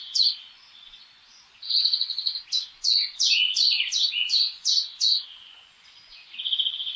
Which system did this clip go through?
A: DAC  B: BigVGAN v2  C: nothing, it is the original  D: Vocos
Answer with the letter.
D